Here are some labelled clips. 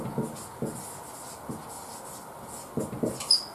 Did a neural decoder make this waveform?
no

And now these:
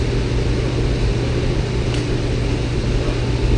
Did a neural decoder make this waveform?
no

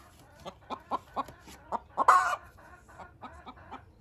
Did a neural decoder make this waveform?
no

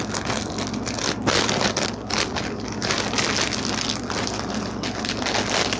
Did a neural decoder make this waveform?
no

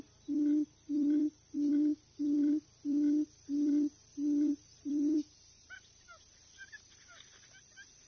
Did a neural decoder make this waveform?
yes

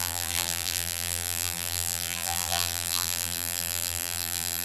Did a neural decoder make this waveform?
yes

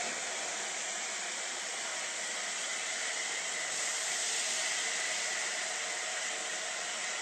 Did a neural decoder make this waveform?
yes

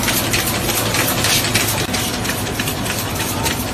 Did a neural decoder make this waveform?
no